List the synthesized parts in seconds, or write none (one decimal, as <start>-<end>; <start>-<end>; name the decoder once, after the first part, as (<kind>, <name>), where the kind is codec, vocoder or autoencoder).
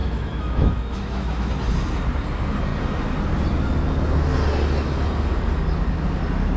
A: 0.0-1.5 (autoencoder, DAC-VAE)